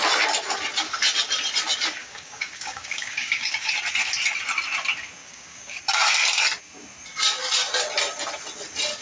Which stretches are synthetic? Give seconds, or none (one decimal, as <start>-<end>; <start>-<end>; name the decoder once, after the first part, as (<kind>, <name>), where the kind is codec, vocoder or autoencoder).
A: 2.0-3.7 (codec, DAC); 5.2-5.8